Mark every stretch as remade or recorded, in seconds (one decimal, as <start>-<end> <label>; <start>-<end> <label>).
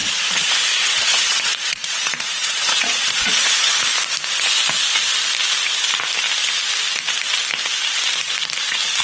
0.0-3.9 remade; 3.9-9.0 recorded